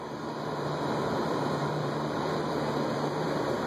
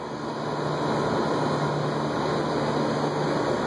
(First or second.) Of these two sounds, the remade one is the first